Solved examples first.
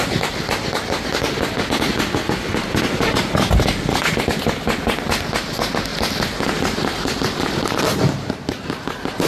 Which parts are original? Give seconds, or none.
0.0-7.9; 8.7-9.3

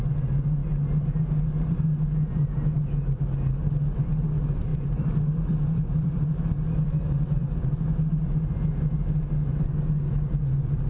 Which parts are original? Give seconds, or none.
0.0-4.7; 7.5-10.9

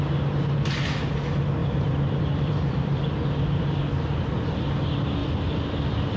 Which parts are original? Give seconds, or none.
0.0-1.6; 3.0-5.2

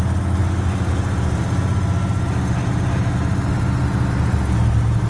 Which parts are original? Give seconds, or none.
0.0-5.1

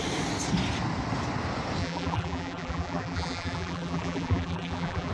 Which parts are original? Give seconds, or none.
0.0-1.8